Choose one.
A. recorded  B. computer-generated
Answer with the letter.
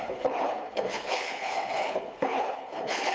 B